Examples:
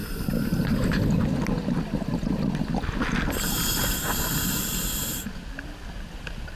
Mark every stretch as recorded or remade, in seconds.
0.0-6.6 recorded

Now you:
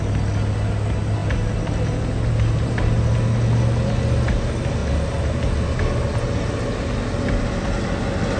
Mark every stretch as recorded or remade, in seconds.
0.0-8.4 recorded

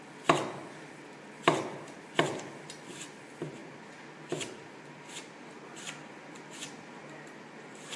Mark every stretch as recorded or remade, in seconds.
0.0-8.0 recorded